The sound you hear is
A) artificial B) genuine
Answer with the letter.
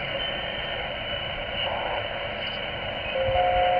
B